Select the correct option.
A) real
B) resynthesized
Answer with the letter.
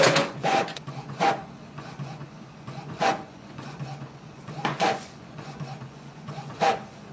B